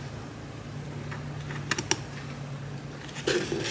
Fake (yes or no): no